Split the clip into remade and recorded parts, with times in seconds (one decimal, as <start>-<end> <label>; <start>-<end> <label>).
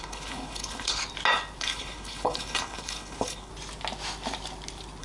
0.0-1.0 remade; 1.0-1.6 recorded; 1.6-3.5 remade; 3.5-5.0 recorded